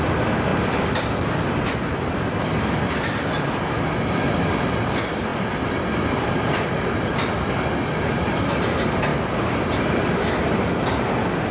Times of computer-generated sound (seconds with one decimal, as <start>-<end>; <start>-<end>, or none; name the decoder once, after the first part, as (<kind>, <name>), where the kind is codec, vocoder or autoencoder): none